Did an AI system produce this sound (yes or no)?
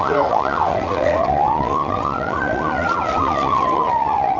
yes